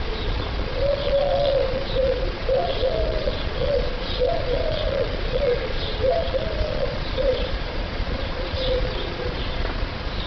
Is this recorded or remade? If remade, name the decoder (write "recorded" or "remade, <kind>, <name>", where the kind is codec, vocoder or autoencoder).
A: remade, vocoder, Vocos